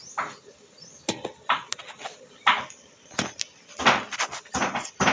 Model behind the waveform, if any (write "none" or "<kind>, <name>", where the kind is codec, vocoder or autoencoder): none